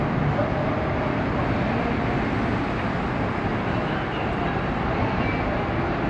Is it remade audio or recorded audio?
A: recorded